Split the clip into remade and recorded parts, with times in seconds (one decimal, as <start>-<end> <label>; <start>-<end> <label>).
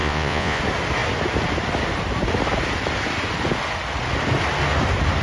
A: 0.0-0.6 remade; 0.6-5.2 recorded